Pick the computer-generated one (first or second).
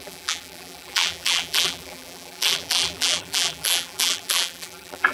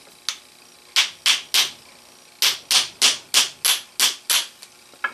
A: first